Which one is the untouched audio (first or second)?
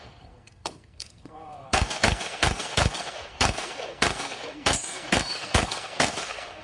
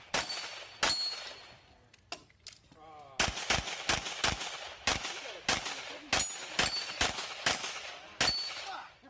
second